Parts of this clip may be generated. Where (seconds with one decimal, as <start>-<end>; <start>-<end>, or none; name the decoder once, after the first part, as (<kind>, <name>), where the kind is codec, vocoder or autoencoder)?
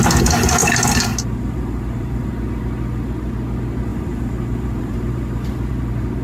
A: 0.6-2.3 (vocoder, BigVGAN v2); 3.9-5.7